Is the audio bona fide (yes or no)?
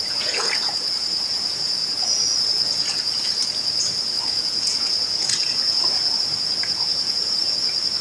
no